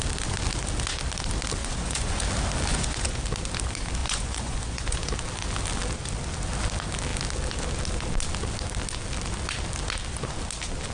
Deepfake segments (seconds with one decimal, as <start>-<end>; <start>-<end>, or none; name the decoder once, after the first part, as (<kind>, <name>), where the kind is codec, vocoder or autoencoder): 1.6-2.2 (vocoder, Vocos); 2.7-3.2; 4.0-5.1